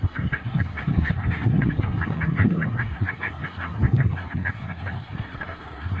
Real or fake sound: fake